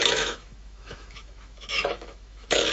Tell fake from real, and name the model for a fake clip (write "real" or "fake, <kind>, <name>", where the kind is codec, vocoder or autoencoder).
fake, autoencoder, DAC-VAE